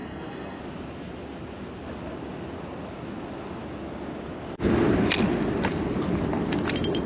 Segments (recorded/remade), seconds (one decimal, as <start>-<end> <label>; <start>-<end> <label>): 0.0-0.6 remade; 0.6-7.1 recorded